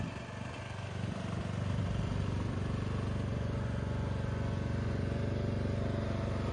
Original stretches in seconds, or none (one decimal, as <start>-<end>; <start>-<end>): 0.0-3.3; 5.2-6.5